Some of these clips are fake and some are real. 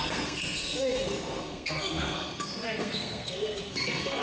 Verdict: fake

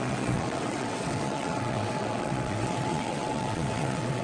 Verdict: fake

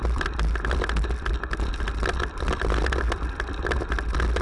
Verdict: real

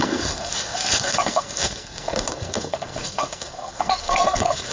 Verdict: fake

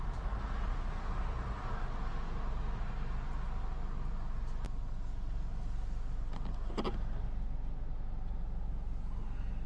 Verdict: real